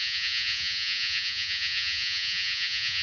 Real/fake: fake